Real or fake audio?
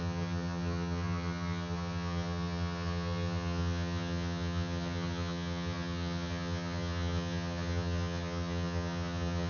fake